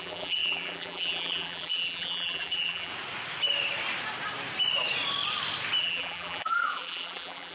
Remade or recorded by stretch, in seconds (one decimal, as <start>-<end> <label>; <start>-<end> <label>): 0.0-2.9 remade; 2.9-5.8 recorded; 5.8-7.5 remade